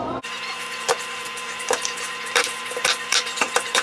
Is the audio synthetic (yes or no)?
yes